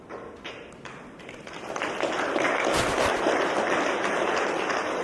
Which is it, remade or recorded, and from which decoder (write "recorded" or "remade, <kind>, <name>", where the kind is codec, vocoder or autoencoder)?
recorded